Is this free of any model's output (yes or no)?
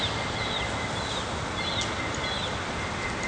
yes